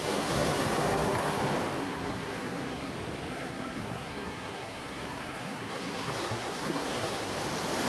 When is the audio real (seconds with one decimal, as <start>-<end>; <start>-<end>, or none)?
1.4-1.8; 2.9-3.3; 7.3-7.9